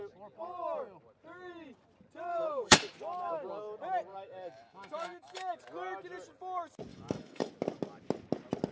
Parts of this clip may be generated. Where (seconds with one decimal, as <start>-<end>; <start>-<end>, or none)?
2.3-2.9; 4.1-5.6; 6.9-7.5